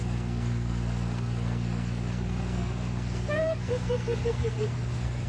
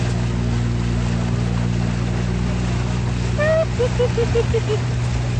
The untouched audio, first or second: second